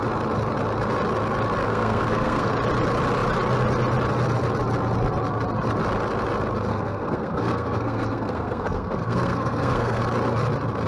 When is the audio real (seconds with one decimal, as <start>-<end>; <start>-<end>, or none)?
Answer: 0.0-1.6; 2.5-6.7; 10.0-10.9